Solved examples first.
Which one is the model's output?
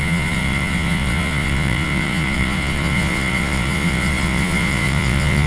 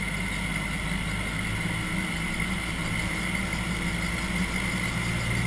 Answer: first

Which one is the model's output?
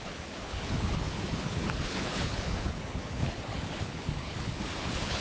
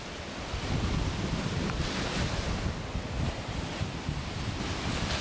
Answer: first